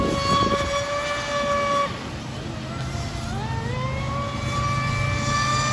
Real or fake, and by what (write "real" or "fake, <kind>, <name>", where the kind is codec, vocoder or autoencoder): real